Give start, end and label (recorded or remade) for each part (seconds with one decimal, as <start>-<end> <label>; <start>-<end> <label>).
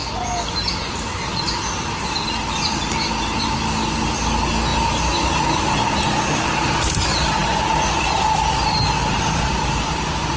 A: 0.0-10.4 recorded